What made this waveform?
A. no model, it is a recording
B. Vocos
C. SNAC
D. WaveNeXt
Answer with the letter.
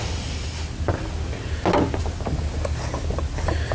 A